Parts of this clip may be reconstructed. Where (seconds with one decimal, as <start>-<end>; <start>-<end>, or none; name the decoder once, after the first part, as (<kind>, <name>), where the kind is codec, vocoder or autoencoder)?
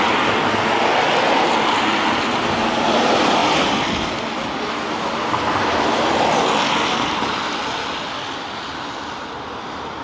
none